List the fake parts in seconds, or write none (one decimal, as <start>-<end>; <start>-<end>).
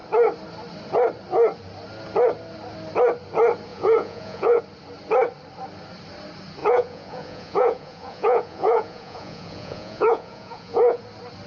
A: 3.7-4.6; 6.6-11.0